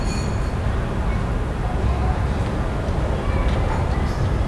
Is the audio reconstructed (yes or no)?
no